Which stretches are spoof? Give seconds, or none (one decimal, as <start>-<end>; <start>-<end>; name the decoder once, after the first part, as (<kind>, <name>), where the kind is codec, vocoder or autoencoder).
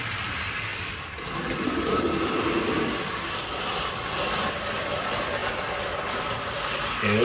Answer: 0.7-5.0 (vocoder, BigVGAN v2); 5.4-6.3